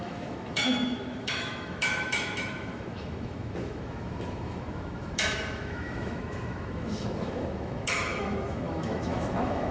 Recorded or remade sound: remade